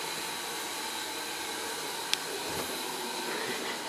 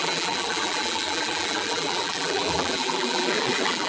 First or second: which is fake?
second